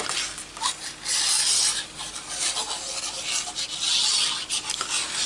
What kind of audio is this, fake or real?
real